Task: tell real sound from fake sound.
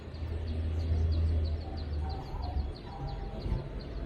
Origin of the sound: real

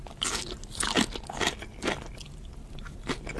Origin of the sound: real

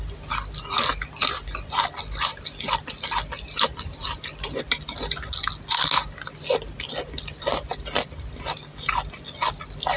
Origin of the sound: real